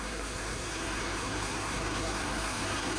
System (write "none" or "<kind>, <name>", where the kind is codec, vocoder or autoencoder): codec, SNAC